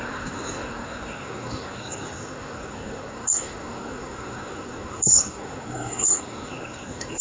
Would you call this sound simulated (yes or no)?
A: yes